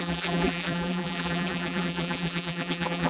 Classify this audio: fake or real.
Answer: fake